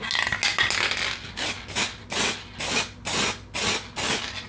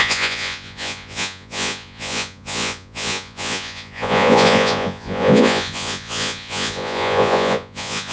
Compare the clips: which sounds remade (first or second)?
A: second